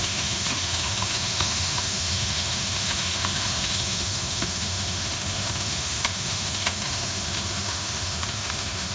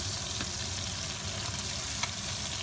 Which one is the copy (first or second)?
first